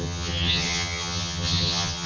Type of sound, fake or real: fake